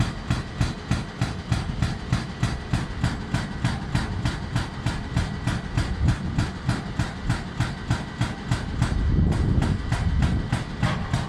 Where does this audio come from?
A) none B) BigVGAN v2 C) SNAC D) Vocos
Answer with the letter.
A